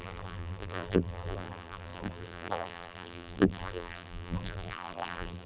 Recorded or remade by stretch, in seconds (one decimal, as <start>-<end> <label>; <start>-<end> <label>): 0.0-5.5 remade